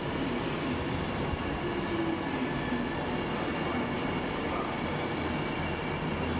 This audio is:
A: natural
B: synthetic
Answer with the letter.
A